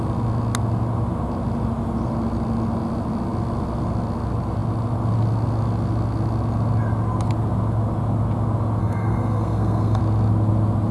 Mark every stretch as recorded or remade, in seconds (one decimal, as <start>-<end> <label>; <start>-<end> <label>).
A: 0.0-8.8 recorded; 8.8-10.0 remade; 10.0-10.9 recorded